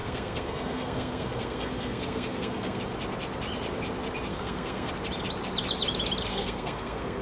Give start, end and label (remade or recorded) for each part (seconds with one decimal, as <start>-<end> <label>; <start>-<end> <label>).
0.0-2.8 remade; 2.8-4.3 recorded; 4.3-4.9 remade; 4.9-6.3 recorded; 6.3-7.2 remade